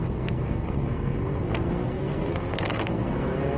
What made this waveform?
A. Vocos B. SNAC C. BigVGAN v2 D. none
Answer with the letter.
B